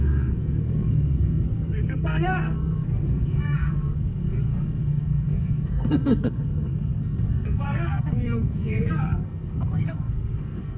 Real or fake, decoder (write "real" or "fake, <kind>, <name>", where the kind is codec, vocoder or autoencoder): fake, codec, SNAC